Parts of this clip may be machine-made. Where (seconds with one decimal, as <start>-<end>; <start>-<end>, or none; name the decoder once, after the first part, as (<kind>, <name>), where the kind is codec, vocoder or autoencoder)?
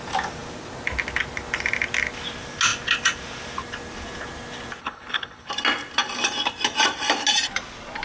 4.8-5.5 (codec, HILCodec)